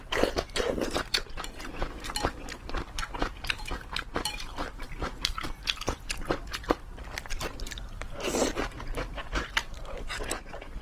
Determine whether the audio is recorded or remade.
remade